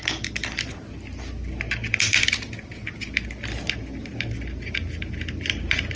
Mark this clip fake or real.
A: real